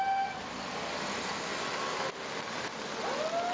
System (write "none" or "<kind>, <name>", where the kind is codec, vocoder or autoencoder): none